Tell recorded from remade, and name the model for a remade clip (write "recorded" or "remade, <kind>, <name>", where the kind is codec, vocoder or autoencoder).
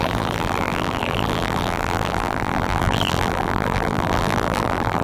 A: remade, vocoder, BigVGAN v2